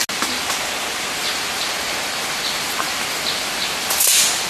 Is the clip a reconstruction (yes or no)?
no